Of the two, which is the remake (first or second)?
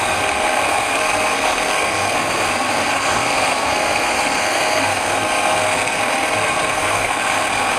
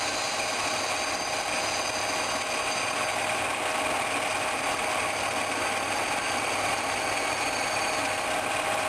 first